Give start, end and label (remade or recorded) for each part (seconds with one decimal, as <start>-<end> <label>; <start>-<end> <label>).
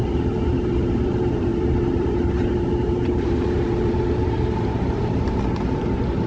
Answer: 0.0-6.3 remade